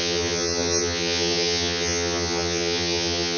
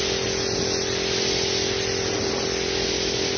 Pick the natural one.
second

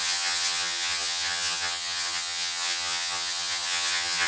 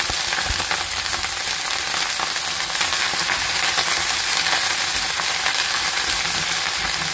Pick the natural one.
second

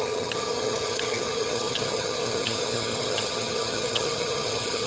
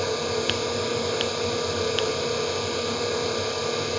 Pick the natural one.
second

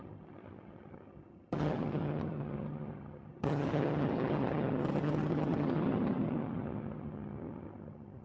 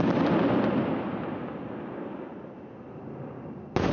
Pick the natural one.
second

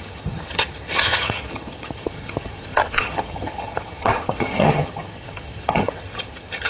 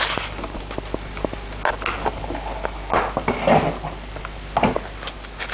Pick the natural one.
second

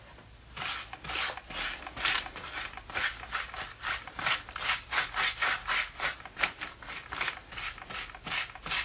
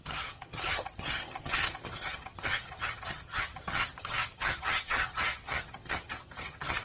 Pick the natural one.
first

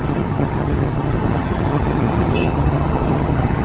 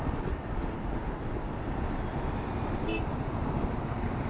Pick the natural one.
second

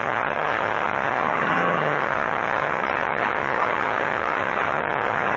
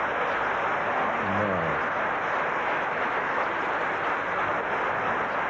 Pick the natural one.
second